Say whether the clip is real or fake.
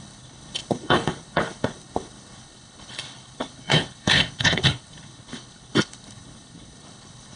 fake